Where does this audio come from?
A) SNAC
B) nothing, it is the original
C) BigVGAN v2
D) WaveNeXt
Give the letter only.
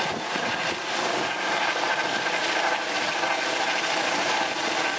B